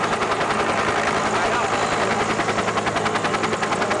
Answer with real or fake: real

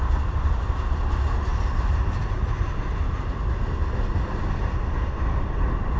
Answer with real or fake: real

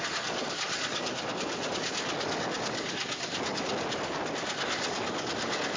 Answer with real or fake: real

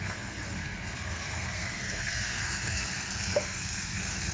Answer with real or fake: fake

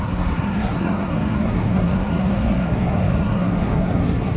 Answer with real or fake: fake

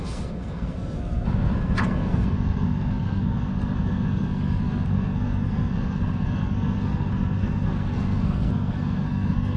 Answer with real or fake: fake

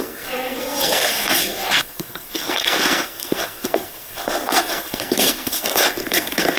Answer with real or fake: fake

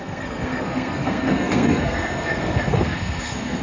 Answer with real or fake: fake